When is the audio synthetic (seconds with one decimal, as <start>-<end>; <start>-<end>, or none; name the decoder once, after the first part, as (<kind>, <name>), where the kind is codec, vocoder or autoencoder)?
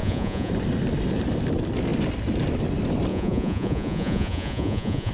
0.0-0.5 (vocoder, Vocos); 3.1-5.1